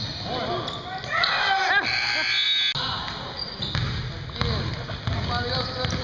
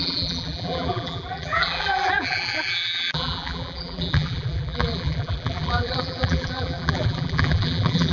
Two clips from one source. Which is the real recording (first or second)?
first